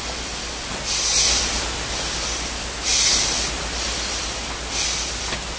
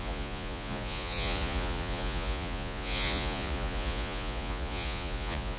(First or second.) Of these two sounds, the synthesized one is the second